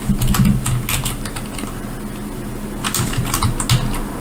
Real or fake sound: real